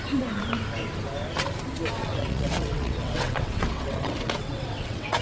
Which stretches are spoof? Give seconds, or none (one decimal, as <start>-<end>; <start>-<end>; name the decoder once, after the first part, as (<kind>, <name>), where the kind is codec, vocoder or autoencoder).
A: 2.0-5.2 (vocoder, WaveNeXt)

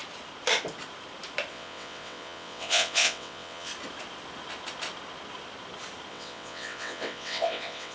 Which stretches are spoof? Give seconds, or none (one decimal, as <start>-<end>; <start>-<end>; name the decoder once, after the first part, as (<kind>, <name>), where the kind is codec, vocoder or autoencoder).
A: 1.5-3.7 (vocoder, WaveNeXt); 6.1-7.9

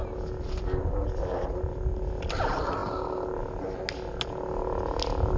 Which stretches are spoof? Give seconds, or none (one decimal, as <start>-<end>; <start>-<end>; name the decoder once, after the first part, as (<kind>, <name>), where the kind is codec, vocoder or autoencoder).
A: none

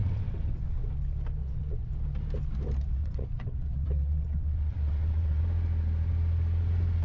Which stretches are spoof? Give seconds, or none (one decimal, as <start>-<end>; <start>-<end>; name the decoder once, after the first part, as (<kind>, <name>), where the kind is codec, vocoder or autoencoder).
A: 0.0-0.9 (vocoder, WaveNeXt); 1.4-1.9; 3.0-5.4

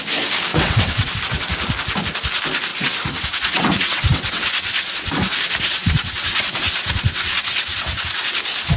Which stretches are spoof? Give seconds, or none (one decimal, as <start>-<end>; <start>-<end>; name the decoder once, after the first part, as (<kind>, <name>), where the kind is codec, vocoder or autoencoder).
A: 0.5-1.2 (vocoder, WaveNeXt); 2.7-5.1; 5.7-8.2